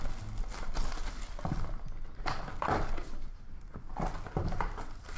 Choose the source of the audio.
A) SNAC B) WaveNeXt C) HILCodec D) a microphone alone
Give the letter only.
D